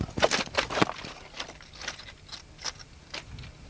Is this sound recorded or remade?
recorded